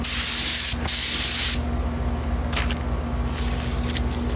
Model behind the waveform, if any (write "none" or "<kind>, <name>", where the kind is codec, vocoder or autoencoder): none